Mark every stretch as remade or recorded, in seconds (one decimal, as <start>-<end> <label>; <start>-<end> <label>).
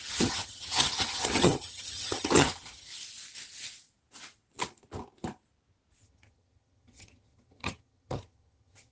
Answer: 0.0-2.9 remade; 2.9-6.0 recorded; 6.0-8.9 remade